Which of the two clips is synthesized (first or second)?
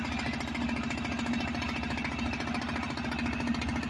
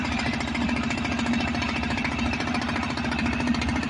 second